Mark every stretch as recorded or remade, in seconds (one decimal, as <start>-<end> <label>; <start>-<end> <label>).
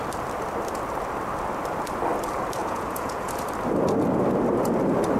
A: 0.0-2.6 recorded; 2.6-3.3 remade; 3.3-5.2 recorded